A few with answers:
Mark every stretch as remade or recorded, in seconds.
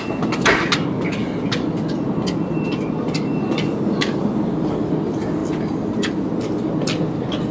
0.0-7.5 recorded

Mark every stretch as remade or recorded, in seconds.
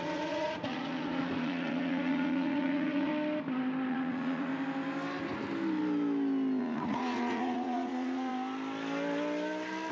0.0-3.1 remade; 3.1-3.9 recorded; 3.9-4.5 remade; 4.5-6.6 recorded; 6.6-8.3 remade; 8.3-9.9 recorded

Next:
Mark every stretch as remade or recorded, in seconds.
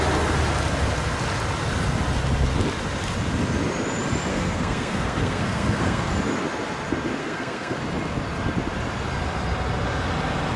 0.0-4.3 recorded; 4.3-6.1 remade; 6.1-7.2 recorded; 7.2-7.8 remade; 7.8-10.6 recorded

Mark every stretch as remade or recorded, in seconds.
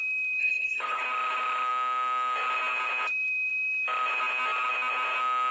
0.0-0.4 recorded; 0.4-1.0 remade; 1.0-5.5 recorded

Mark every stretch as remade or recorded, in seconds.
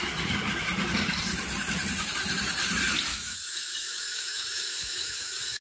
0.0-3.1 recorded; 3.1-5.6 remade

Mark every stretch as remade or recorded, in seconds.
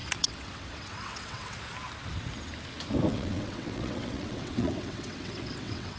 0.0-1.6 remade; 1.6-3.1 recorded; 3.1-6.0 remade